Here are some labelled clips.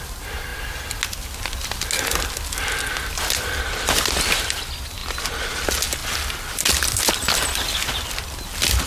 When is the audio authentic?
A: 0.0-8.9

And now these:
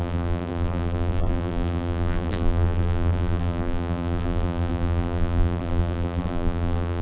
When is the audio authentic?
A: none

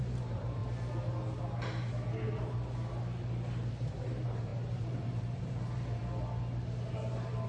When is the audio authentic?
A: 0.6-3.7; 6.0-7.5

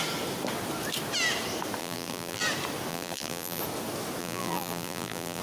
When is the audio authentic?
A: 0.0-1.8; 2.4-2.9; 3.6-4.2